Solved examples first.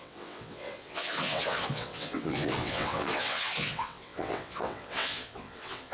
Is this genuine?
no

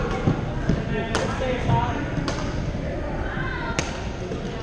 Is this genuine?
yes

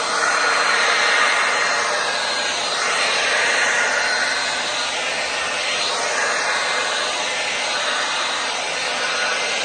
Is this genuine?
yes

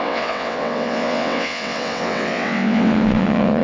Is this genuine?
no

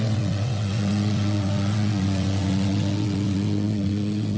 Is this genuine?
no